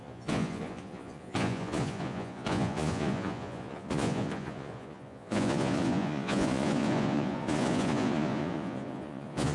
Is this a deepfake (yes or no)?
yes